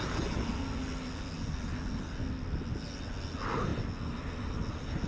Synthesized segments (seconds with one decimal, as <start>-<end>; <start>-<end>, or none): none